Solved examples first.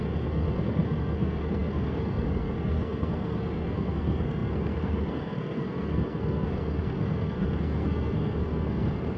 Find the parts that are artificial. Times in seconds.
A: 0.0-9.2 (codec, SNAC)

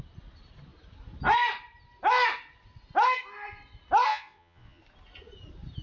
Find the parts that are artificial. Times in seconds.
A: 4.1-4.8 (vocoder, Vocos)

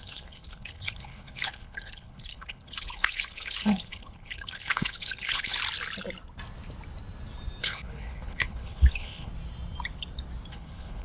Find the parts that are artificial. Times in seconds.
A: 0.0-5.6 (codec, HILCodec); 7.6-9.3; 10.5-11.0

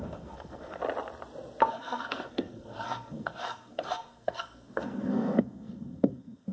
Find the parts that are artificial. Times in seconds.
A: 0.0-0.8 (codec, SNAC); 1.7-6.5

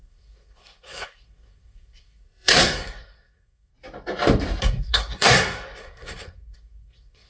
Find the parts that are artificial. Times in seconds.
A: 0.0-3.7 (codec, SNAC); 4.6-7.3

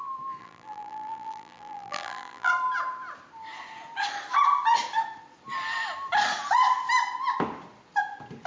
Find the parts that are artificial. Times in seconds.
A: 0.4-2.5 (vocoder, BigVGAN v2)